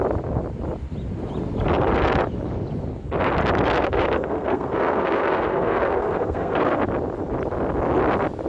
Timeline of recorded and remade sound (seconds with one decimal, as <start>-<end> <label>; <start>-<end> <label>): 0.0-3.8 recorded; 3.8-6.8 remade; 6.8-8.5 recorded